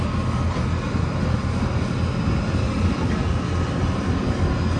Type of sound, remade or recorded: recorded